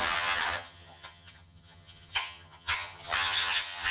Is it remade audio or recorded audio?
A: remade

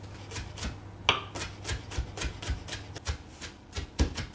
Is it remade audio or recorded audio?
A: recorded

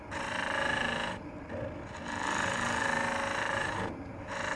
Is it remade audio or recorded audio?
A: recorded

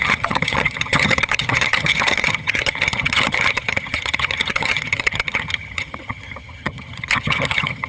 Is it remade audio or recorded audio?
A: remade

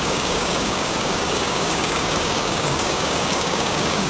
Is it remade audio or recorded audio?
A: remade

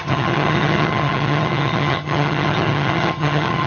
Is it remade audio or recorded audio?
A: remade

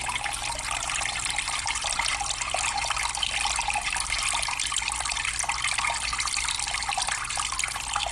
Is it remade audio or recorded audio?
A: recorded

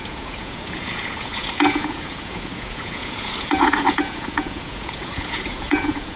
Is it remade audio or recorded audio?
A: remade